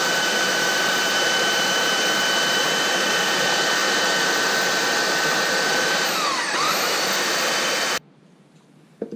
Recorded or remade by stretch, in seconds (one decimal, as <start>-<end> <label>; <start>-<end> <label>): 0.0-9.2 remade